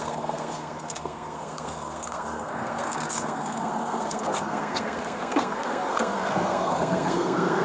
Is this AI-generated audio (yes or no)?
yes